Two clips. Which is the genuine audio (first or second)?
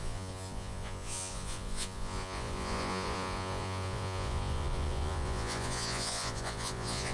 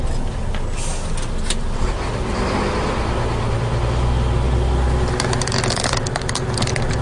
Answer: second